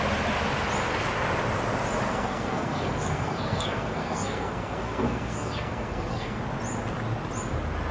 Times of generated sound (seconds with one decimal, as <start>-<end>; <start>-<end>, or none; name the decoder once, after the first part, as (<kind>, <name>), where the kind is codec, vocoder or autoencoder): 2.1-6.4 (codec, SNAC)